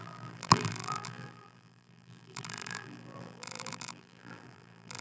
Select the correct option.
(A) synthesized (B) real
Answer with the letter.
A